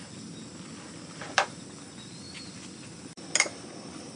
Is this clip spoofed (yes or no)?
no